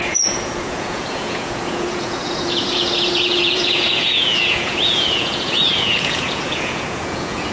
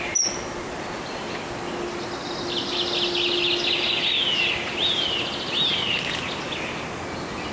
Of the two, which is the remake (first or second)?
first